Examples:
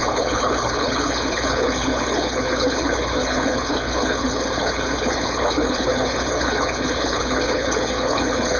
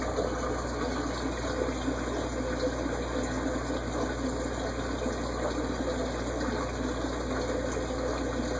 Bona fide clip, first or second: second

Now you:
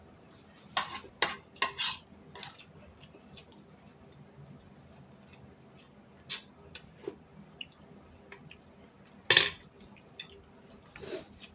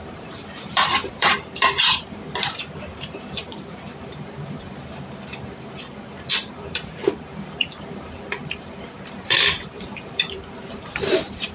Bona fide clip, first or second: first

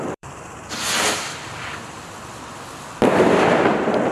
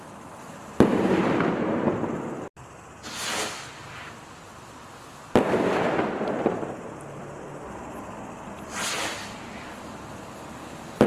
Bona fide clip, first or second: second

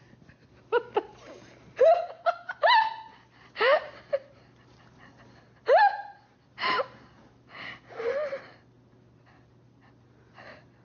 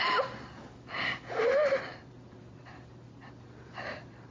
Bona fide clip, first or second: first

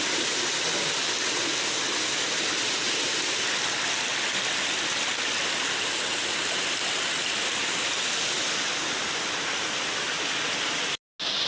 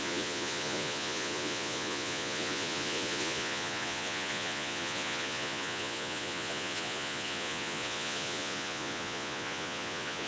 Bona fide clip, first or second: first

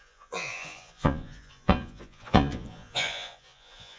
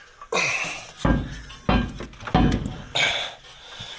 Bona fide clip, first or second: second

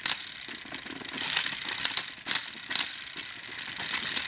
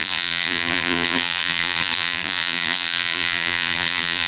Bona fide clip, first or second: first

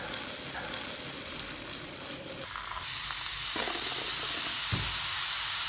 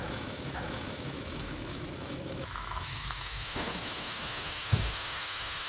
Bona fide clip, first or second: first